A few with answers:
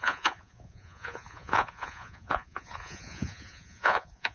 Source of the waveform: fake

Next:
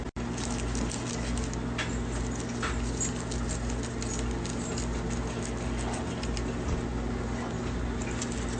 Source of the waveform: real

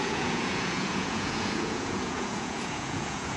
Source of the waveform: fake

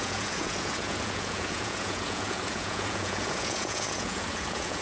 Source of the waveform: fake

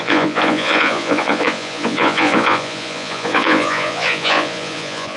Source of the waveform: fake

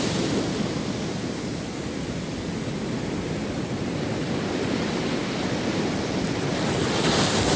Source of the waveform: real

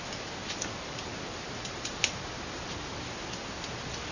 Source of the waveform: real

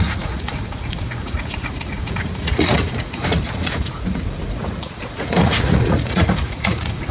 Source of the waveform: fake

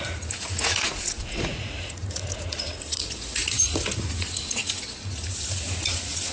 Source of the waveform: fake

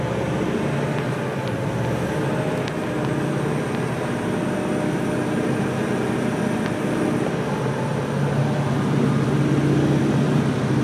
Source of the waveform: real